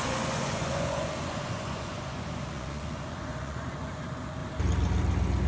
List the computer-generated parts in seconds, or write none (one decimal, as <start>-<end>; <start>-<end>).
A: 0.0-4.4